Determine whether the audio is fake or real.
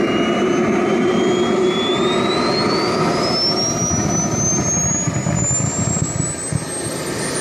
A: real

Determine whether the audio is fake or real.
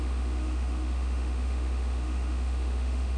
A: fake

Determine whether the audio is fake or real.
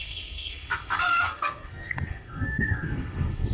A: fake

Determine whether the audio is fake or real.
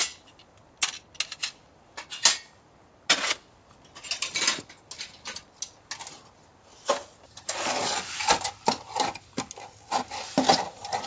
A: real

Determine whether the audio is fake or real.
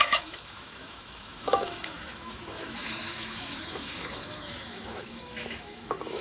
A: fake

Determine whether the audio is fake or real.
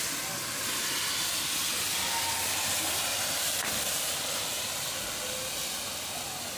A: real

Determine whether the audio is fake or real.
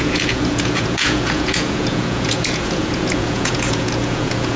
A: fake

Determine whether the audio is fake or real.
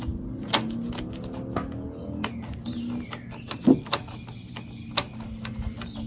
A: real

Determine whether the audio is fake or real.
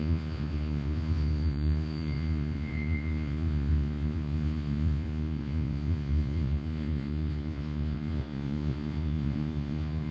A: fake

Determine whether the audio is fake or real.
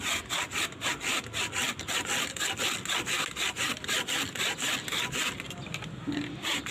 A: real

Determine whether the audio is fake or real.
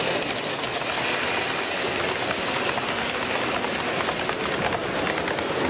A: real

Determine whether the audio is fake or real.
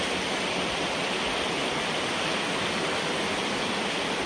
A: real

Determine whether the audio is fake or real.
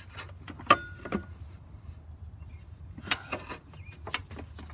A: real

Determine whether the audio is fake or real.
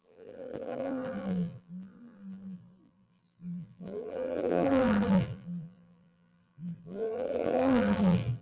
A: fake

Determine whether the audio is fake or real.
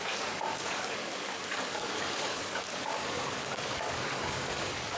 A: fake